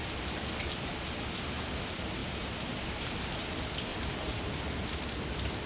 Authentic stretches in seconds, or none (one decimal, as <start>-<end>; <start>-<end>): 0.0-2.2; 2.7-3.9; 4.8-5.7